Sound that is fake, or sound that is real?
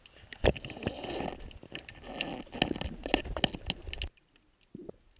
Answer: real